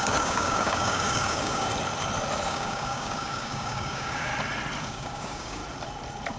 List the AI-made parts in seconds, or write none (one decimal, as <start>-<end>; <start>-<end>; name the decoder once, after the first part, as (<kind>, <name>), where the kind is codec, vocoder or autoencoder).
0.0-1.7 (codec, DAC); 2.5-4.3; 4.8-5.6